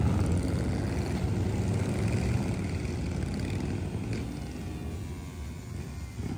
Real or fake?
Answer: real